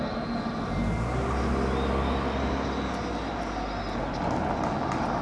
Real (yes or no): yes